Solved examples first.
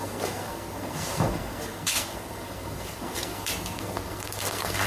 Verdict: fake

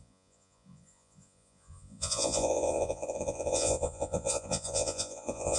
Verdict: fake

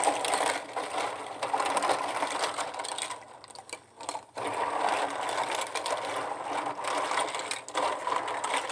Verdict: real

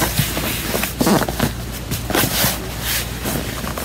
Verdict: real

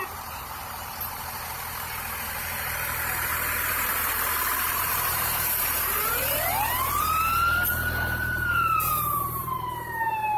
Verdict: fake